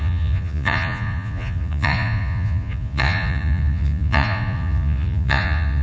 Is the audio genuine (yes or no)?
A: no